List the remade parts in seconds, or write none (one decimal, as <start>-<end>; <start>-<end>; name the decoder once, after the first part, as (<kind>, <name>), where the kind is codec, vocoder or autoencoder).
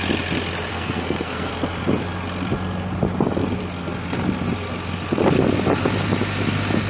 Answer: 0.7-1.5 (codec, SNAC)